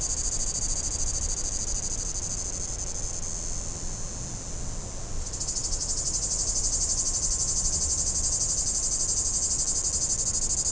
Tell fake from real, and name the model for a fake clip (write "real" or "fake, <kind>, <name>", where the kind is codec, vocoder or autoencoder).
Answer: real